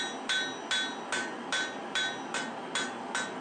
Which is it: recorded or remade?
recorded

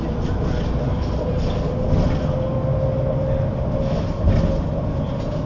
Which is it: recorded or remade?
recorded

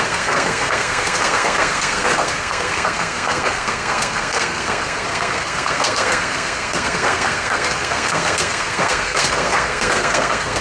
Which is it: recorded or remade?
remade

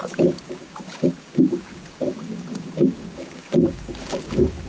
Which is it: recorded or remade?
remade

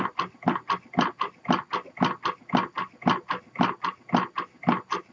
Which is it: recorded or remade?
recorded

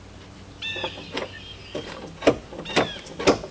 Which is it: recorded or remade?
recorded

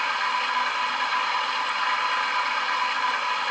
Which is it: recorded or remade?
recorded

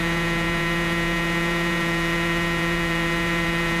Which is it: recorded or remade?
remade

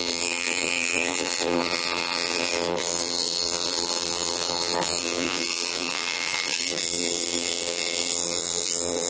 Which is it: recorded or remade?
remade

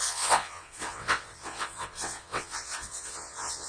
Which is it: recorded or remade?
remade